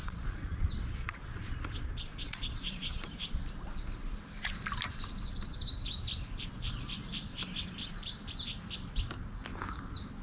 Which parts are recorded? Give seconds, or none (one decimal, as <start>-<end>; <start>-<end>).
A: 3.4-10.2